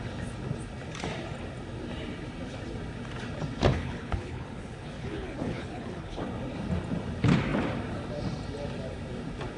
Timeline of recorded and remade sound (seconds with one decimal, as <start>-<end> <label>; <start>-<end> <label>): 0.0-3.7 recorded; 3.7-6.2 remade; 6.2-9.6 recorded